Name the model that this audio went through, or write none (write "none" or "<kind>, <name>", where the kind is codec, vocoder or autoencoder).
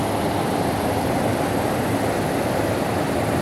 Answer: none